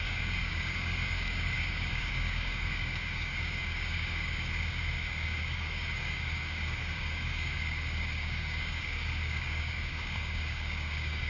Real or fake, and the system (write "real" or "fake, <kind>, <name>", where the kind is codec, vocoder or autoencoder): fake, codec, DAC